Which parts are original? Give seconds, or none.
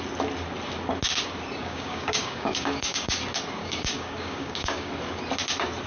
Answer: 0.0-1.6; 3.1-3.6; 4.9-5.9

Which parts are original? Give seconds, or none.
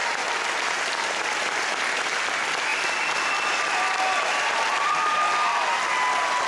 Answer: 0.0-6.5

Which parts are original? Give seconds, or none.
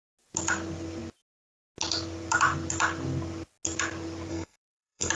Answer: 0.0-4.3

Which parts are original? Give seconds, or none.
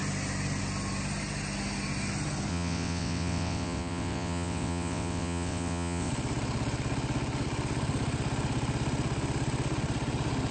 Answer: 0.0-2.5; 6.1-10.5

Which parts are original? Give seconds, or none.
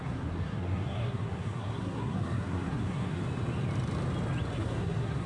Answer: 3.2-4.5